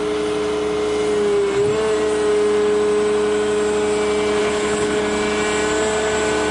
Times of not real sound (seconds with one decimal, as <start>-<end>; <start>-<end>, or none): 4.4-5.0